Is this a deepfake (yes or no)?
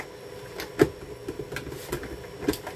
no